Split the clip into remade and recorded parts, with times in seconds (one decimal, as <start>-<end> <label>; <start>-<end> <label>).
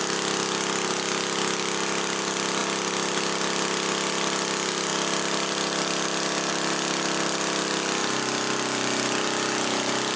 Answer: 0.0-10.2 recorded